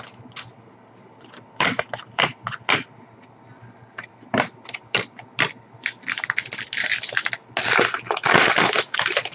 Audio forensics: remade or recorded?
recorded